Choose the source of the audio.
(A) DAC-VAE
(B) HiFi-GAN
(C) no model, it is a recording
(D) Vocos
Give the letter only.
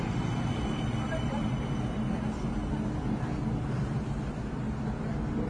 C